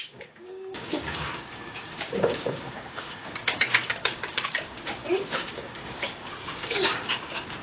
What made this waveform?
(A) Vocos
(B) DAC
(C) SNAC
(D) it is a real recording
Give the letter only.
B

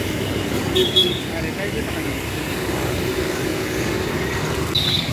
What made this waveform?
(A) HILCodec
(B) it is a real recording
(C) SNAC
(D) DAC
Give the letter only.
D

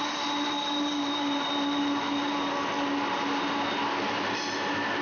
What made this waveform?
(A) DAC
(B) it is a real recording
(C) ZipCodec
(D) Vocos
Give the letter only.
B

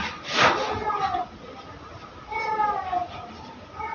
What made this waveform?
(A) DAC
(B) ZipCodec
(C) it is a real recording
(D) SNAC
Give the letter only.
C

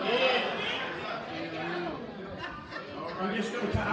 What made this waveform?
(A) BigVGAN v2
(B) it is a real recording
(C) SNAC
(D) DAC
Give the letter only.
B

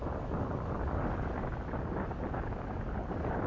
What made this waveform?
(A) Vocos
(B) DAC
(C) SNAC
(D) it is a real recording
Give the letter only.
D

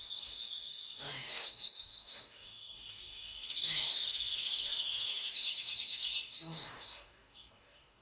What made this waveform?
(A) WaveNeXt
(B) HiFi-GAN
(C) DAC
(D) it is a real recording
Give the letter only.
C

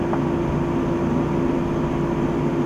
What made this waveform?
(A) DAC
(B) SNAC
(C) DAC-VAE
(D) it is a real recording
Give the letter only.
D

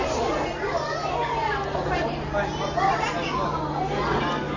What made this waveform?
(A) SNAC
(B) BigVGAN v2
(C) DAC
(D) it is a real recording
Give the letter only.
D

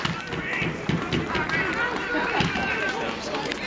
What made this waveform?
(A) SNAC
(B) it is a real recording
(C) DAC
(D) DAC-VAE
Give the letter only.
B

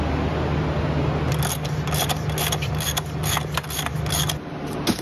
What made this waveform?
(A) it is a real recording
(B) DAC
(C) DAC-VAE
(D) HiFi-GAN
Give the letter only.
A